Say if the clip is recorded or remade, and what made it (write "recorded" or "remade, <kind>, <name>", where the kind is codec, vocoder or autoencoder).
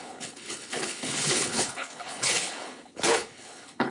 remade, codec, HILCodec